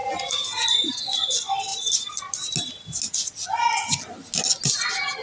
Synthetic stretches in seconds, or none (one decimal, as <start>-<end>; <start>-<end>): none

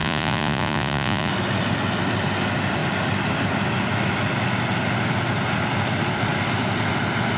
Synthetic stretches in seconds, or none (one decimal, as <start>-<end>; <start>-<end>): 0.0-1.3

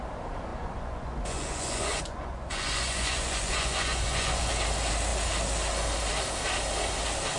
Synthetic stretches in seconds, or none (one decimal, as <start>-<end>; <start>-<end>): 0.5-4.5

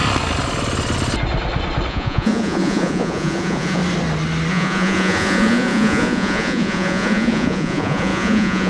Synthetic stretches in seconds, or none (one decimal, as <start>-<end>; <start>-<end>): 1.9-3.8; 4.5-8.7

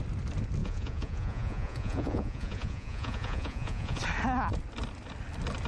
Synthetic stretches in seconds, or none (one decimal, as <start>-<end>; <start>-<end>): 0.6-4.0